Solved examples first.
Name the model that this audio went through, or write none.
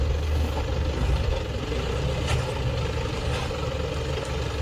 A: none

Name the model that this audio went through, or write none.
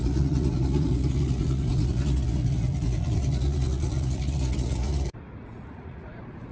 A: vocoder, Vocos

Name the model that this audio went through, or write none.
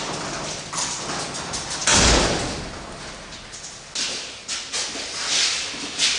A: none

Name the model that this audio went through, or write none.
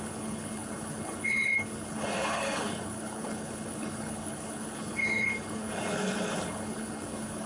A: codec, HILCodec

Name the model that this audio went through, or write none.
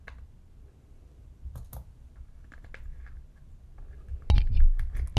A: none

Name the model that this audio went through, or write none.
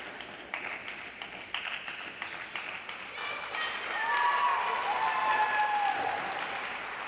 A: none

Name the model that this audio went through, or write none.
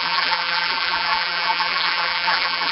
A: vocoder, BigVGAN v2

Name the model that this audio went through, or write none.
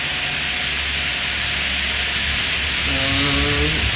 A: none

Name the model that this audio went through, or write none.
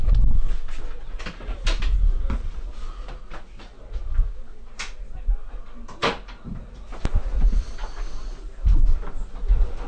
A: none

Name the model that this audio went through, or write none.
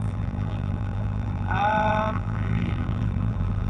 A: vocoder, BigVGAN v2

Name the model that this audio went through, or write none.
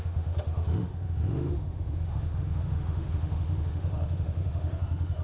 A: autoencoder, DAC-VAE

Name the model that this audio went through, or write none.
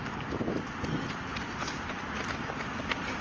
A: none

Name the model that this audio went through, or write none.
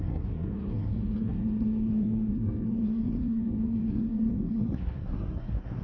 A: codec, SNAC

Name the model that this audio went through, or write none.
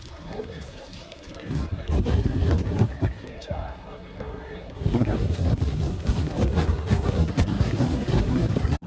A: codec, SNAC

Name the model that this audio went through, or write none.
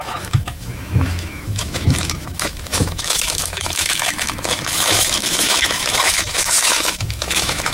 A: autoencoder, DAC-VAE